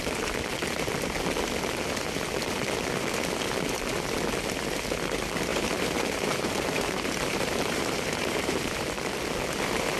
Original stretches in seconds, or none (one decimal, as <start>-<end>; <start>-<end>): 0.0-5.5; 8.8-10.0